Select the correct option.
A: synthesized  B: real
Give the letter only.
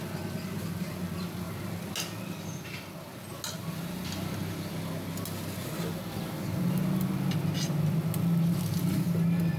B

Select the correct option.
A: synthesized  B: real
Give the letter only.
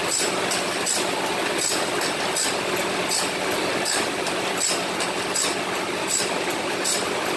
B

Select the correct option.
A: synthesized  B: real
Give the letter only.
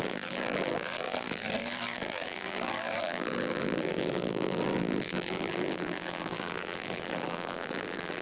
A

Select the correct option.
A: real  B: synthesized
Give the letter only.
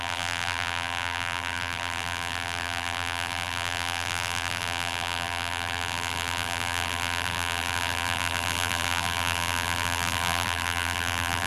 B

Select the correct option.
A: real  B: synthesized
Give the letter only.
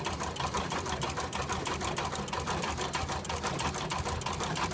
B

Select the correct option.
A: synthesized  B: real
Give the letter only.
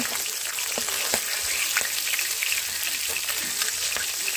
B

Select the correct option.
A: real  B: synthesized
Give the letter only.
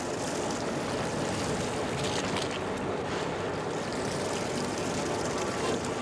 A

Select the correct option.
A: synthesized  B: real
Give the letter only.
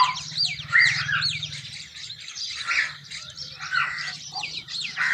A